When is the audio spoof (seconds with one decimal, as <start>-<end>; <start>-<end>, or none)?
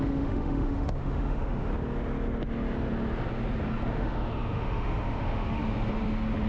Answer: 0.0-1.7; 3.9-5.6